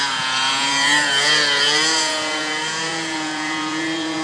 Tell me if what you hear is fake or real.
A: fake